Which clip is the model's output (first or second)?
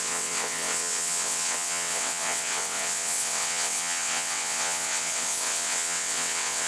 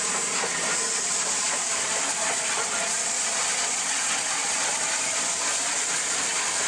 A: first